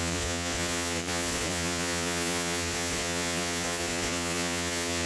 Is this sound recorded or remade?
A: remade